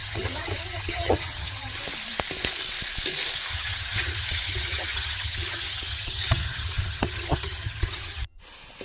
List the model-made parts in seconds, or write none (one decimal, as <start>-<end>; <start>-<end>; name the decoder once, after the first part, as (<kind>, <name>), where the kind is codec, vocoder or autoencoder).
0.0-1.8 (vocoder, HiFi-GAN); 3.5-8.4